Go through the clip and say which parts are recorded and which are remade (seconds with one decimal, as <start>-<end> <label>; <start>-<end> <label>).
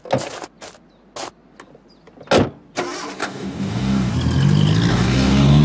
0.0-3.2 recorded; 3.2-4.1 remade; 4.1-4.9 recorded; 4.9-5.6 remade